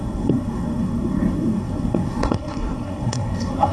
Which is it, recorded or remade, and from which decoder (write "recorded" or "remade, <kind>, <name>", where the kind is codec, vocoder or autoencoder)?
remade, codec, SNAC